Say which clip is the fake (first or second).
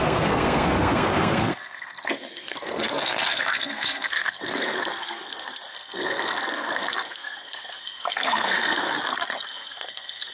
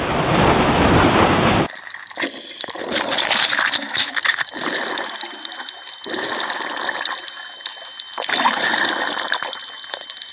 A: first